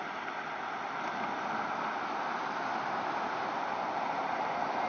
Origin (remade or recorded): recorded